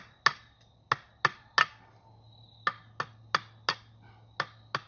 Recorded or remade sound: recorded